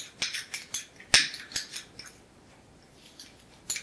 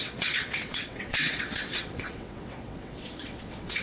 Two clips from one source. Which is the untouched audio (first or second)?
first